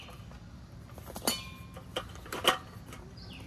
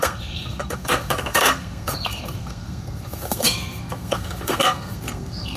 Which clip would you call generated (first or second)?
second